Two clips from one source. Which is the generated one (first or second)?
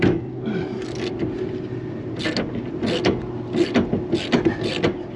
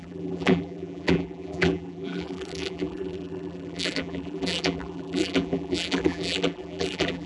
second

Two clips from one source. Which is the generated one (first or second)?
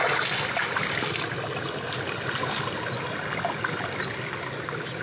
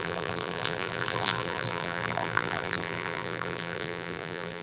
second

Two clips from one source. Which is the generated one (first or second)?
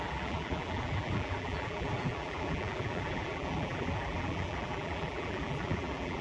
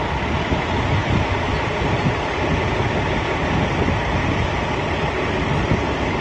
first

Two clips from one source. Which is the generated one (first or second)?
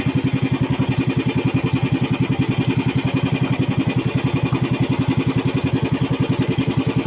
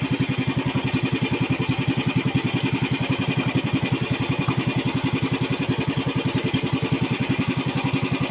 second